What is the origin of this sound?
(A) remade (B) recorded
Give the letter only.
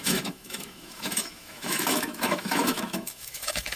A